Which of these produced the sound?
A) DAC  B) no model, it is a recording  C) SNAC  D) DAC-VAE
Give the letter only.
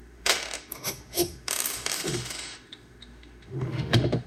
D